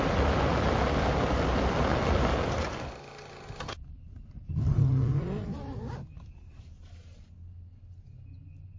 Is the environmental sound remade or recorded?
recorded